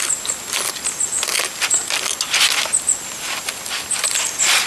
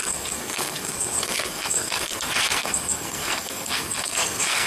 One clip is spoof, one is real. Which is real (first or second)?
first